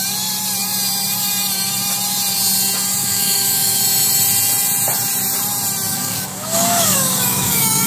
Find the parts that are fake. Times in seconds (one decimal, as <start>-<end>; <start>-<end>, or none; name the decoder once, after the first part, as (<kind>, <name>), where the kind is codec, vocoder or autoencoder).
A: 3.0-3.8 (codec, DAC); 5.9-7.9